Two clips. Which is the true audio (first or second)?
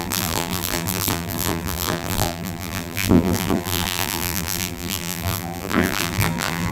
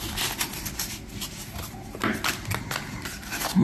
second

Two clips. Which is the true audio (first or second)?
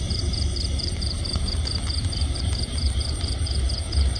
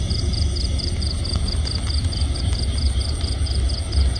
second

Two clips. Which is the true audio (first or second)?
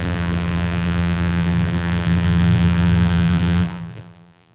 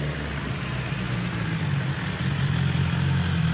second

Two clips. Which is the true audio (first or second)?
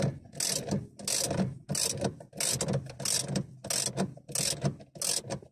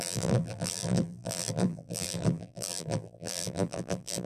first